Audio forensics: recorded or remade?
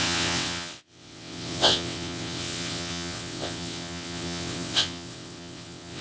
remade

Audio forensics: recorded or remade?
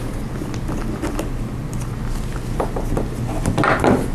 recorded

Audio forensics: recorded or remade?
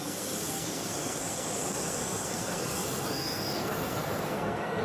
remade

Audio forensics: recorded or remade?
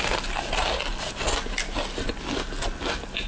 recorded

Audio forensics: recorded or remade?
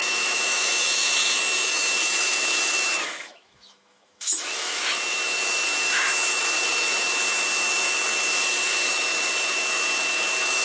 remade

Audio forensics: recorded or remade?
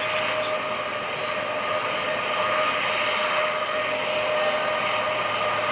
recorded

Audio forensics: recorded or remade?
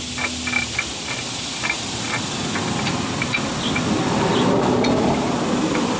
recorded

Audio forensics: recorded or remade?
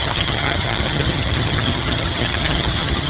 remade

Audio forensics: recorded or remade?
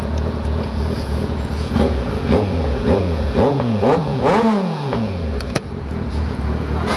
remade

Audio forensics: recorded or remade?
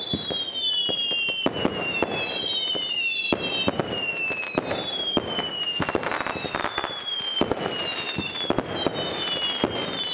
recorded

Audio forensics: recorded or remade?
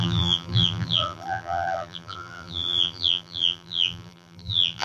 remade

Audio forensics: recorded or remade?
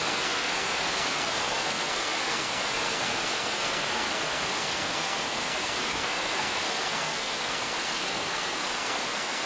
remade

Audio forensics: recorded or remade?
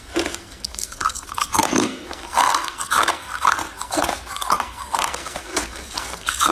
remade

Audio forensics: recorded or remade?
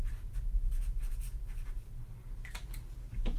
remade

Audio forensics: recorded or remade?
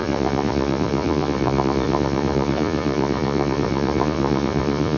remade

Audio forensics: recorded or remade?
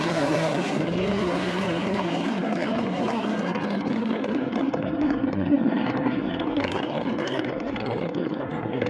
remade